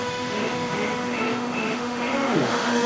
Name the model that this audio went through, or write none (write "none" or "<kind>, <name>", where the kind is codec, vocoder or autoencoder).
autoencoder, DAC-VAE